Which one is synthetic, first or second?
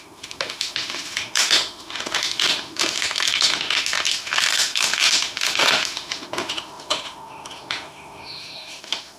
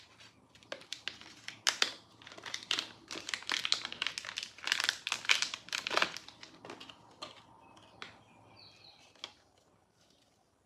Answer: first